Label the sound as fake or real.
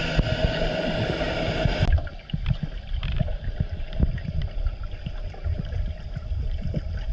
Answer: real